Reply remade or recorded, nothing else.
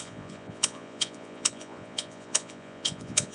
remade